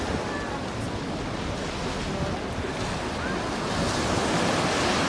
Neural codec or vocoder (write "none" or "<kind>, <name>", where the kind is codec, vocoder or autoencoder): none